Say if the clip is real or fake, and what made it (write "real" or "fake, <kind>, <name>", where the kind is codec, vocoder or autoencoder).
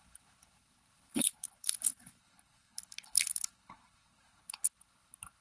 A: fake, codec, HILCodec